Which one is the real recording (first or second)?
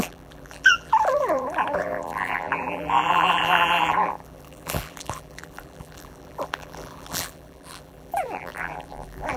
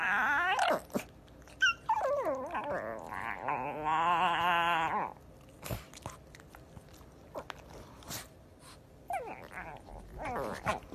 second